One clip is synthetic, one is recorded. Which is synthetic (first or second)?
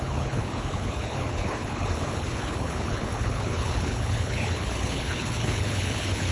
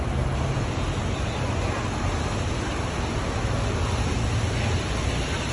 first